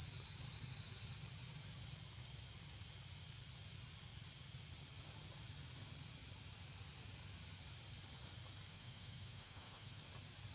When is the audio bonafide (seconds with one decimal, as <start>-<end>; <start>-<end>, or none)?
0.0-8.7; 10.0-10.5